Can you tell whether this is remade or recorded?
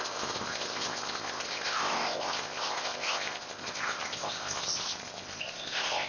remade